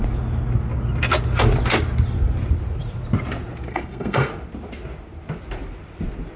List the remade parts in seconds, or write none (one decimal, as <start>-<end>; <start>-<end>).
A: 3.7-4.3